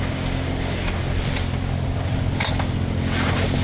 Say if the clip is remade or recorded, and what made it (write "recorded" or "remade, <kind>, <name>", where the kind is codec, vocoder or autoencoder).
recorded